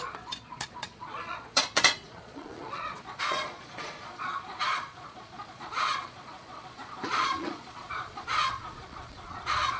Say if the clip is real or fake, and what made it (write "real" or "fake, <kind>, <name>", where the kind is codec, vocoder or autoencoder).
fake, vocoder, Vocos